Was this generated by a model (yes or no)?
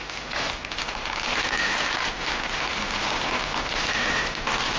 no